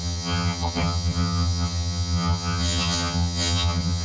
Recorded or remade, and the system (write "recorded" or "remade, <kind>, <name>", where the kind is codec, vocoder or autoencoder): remade, vocoder, HiFi-GAN